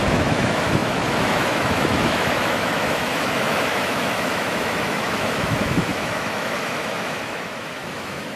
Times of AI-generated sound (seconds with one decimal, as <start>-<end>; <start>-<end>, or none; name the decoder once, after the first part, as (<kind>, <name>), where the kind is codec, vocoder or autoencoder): 0.0-8.4 (autoencoder, DAC-VAE)